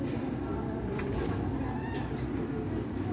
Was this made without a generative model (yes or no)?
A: yes